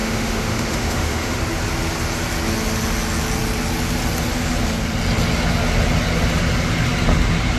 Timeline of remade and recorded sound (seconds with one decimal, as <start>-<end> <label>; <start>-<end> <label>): 0.0-1.4 remade; 1.4-7.6 recorded